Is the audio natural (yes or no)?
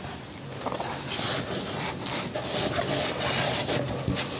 yes